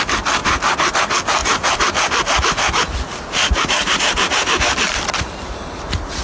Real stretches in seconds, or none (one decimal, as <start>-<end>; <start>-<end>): 0.0-0.4; 0.9-1.4; 5.0-6.2